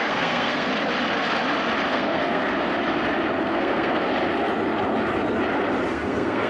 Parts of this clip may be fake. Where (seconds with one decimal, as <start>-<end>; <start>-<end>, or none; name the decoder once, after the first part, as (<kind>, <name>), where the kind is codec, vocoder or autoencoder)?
0.0-0.7 (codec, SNAC); 1.9-2.4; 3.4-4.1; 5.9-6.5